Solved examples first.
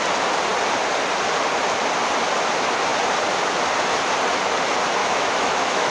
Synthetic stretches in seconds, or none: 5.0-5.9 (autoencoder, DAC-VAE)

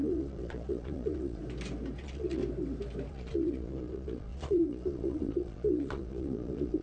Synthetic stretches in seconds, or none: 0.0-1.4 (vocoder, Vocos); 2.0-2.4; 3.1-6.8

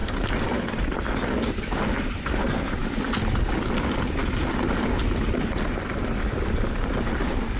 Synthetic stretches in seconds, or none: none

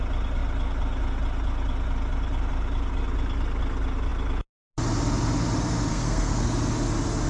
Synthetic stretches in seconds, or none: 5.9-6.5 (codec, SNAC)

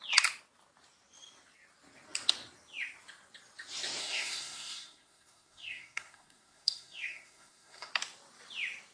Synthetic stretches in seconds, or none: 4.0-7.9 (codec, SNAC)

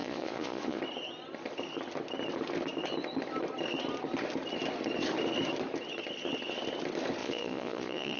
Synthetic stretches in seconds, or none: 0.0-0.8 (vocoder, Vocos); 7.2-8.2